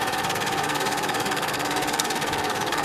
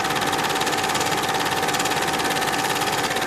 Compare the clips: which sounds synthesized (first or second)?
first